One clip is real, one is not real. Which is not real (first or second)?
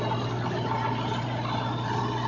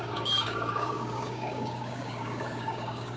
second